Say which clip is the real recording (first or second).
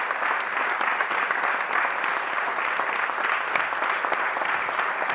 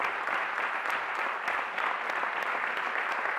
first